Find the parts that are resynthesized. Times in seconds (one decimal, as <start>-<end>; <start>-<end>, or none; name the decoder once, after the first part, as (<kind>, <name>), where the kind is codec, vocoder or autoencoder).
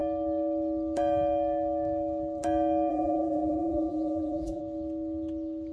2.9-4.6 (vocoder, BigVGAN v2)